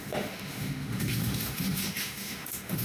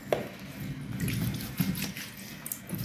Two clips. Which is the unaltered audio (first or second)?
second